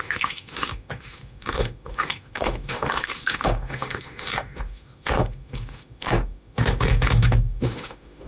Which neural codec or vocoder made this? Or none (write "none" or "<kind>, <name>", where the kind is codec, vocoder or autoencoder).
autoencoder, DAC-VAE